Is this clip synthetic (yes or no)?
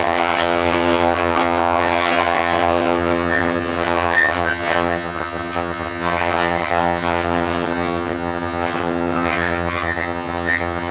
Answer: yes